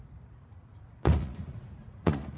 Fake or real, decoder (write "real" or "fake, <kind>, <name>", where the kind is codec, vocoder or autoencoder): fake, vocoder, Vocos